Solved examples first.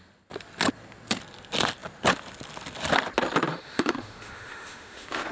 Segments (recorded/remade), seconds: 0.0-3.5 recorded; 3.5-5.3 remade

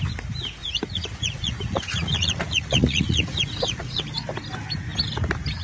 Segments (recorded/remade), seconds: 0.0-0.6 recorded; 0.6-4.0 remade; 4.0-5.6 recorded

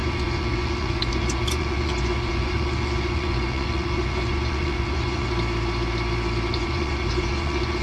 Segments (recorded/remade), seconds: 0.0-5.3 remade; 5.3-6.5 recorded; 6.5-7.8 remade

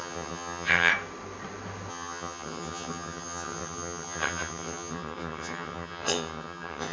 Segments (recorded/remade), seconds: 0.0-0.9 remade; 0.9-1.9 recorded; 1.9-6.9 remade

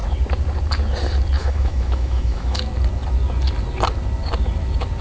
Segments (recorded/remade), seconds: 0.0-1.4 recorded; 1.4-2.6 remade; 2.6-5.0 recorded